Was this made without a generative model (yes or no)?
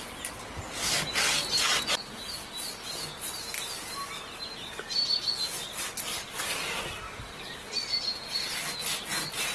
yes